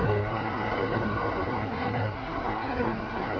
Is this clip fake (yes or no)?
yes